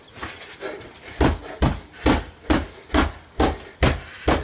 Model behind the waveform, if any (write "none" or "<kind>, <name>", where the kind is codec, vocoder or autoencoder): none